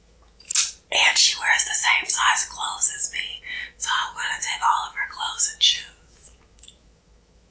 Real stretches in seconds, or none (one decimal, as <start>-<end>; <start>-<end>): 0.5-3.4